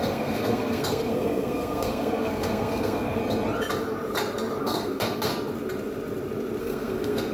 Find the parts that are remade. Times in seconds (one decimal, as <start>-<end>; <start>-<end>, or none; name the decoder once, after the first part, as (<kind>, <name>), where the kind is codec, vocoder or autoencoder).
0.0-3.2 (codec, SNAC); 4.6-5.3; 6.6-7.3